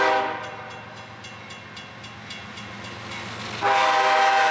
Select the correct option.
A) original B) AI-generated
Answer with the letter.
A